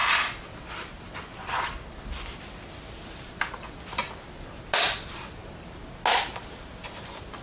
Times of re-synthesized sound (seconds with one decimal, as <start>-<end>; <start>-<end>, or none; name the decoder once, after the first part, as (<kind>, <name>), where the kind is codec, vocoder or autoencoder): none